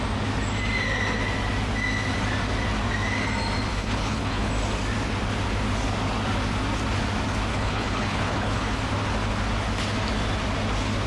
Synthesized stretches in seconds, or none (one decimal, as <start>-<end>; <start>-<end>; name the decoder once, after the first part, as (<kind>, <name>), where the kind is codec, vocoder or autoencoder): 3.7-4.5 (codec, HILCodec); 7.5-8.8